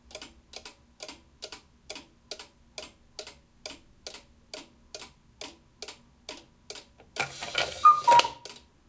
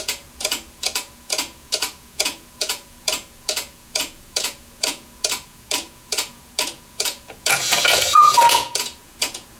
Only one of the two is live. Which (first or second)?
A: first